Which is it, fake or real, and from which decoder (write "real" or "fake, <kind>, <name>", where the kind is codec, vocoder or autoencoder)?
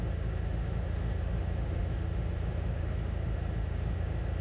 fake, autoencoder, DAC-VAE